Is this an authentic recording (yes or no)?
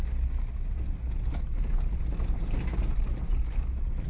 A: yes